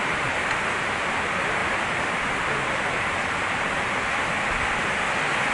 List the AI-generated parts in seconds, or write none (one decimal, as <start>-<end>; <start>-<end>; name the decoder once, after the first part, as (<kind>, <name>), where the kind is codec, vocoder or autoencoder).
none